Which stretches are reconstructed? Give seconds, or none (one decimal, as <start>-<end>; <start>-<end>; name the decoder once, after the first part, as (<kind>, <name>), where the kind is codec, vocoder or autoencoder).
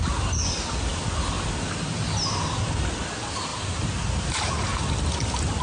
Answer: 3.5-4.9 (vocoder, BigVGAN v2)